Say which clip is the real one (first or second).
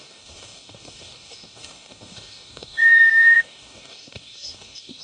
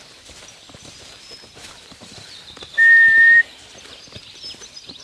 second